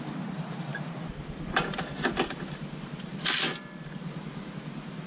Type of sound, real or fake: real